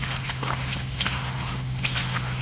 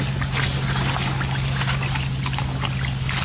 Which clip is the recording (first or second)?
second